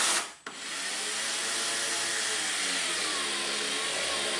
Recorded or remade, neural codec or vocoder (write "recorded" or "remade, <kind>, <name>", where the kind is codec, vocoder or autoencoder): recorded